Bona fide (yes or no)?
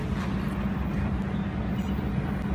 yes